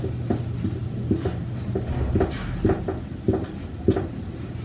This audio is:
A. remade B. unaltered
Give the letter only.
B